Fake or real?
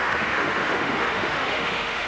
fake